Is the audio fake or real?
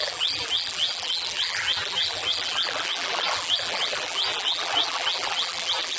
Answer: fake